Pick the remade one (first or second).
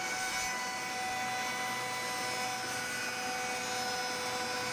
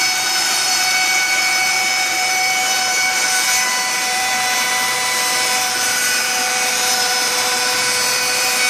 second